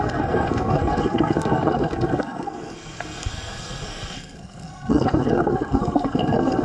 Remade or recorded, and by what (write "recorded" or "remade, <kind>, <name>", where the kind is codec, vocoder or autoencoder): remade, codec, SNAC